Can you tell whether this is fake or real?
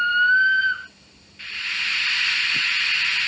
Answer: real